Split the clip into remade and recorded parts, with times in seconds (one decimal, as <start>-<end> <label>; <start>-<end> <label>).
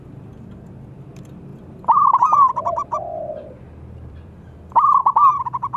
0.0-1.5 recorded; 1.5-5.0 remade; 5.0-5.8 recorded